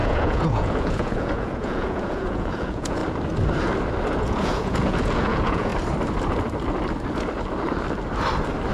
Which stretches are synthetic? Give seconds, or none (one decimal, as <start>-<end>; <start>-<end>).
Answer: 0.0-3.0; 4.2-5.7